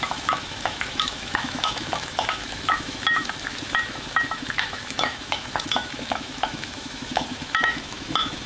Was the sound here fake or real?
fake